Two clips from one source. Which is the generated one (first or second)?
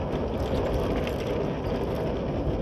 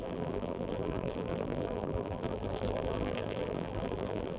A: second